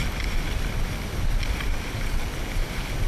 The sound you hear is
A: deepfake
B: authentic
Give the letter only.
B